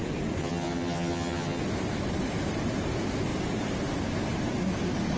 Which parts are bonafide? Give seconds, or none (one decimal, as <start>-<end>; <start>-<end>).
0.0-0.4; 1.6-5.2